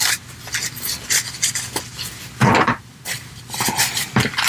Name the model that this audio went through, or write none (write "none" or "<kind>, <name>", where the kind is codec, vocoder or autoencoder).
none